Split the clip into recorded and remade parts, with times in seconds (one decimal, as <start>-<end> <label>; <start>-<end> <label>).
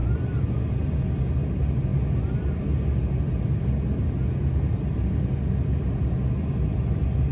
0.0-7.3 recorded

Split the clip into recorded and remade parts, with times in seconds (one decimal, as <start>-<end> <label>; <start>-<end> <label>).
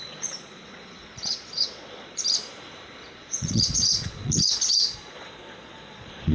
0.0-2.2 remade; 2.2-3.1 recorded; 3.1-6.3 remade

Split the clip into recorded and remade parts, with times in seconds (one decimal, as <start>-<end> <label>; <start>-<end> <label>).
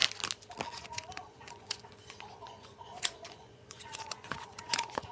0.0-0.7 recorded; 0.7-5.1 remade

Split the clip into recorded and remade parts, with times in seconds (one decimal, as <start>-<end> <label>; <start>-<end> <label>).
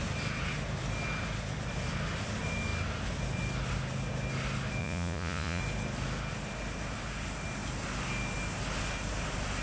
0.0-4.8 recorded; 4.8-5.6 remade; 5.6-9.6 recorded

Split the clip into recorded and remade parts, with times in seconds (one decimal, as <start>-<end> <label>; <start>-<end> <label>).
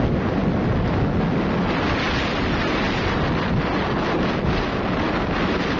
0.0-5.8 recorded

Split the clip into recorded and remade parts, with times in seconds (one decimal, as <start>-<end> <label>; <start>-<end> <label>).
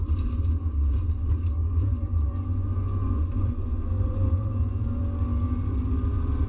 0.0-1.6 recorded; 1.6-5.0 remade; 5.0-6.5 recorded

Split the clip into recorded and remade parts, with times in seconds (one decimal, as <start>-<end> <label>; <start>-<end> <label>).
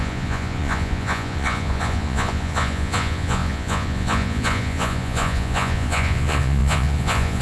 0.0-7.4 remade